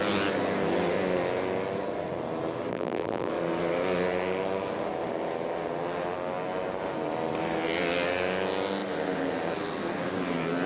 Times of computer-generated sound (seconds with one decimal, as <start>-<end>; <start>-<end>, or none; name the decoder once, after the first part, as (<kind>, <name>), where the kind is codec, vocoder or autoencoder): 2.7-3.3 (vocoder, BigVGAN v2)